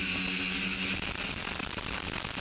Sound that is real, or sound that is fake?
real